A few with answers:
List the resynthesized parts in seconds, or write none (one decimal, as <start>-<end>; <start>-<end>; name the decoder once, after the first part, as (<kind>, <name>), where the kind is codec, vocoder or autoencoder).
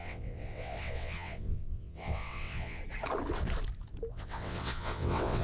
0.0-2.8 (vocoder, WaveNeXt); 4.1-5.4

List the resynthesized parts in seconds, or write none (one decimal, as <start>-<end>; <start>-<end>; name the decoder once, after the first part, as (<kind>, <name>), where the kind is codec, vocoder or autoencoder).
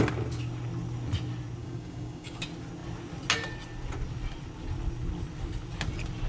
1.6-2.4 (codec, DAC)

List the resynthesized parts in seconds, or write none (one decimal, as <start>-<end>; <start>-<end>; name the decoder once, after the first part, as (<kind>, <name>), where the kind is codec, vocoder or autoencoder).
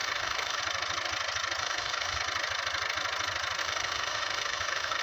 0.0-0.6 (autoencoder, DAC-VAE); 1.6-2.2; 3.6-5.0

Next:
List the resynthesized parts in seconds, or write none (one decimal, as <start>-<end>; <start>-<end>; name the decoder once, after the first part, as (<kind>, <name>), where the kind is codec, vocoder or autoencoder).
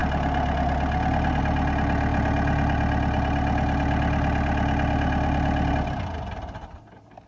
none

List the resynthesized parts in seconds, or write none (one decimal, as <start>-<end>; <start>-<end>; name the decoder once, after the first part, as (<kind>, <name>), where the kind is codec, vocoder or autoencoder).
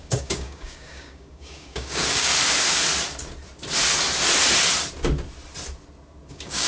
0.0-2.3 (codec, DAC); 6.3-6.7